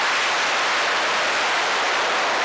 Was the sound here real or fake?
real